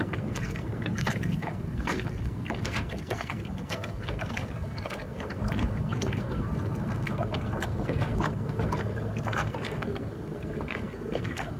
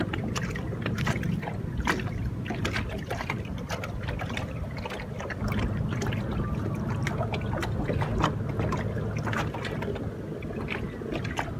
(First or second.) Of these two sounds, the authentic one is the second